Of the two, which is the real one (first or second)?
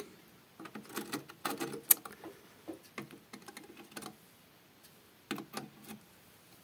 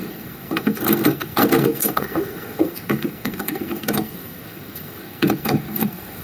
first